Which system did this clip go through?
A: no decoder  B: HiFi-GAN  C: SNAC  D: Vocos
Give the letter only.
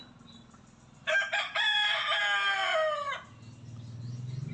A